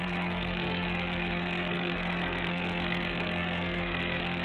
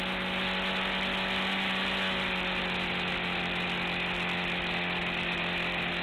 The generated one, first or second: first